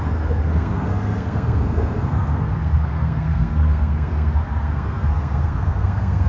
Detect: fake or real fake